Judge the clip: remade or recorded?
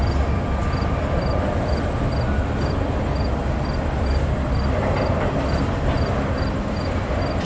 recorded